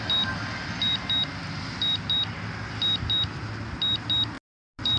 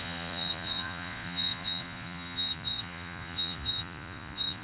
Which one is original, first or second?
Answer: first